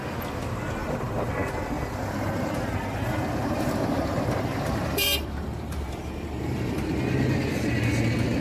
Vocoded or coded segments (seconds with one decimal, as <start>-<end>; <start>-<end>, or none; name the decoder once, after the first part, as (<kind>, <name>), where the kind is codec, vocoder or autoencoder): 0.8-1.3 (vocoder, BigVGAN v2); 2.0-6.8

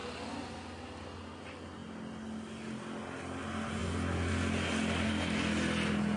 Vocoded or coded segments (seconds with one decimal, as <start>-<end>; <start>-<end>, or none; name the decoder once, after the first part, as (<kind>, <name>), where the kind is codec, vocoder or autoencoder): none